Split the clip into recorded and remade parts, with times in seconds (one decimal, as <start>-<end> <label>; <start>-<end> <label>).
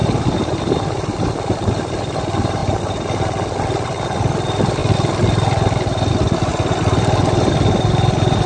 0.0-4.8 remade; 4.8-6.1 recorded; 6.1-6.5 remade; 6.5-7.5 recorded; 7.5-8.5 remade